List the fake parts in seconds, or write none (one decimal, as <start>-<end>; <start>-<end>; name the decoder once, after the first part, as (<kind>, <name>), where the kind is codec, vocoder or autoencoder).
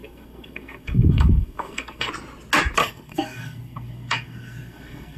0.0-2.1 (codec, SNAC); 2.8-5.2